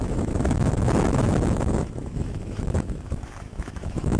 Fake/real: fake